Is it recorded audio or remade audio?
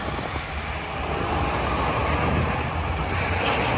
recorded